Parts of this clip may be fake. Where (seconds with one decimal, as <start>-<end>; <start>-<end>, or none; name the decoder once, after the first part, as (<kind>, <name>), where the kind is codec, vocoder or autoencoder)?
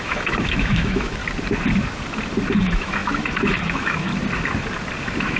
0.0-1.2 (autoencoder, DAC-VAE); 2.6-4.1; 5.0-5.4